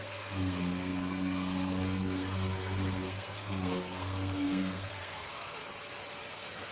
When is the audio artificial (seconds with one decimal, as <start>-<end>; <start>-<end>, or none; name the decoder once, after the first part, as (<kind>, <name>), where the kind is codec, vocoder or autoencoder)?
0.0-5.6 (codec, SNAC); 6.3-6.7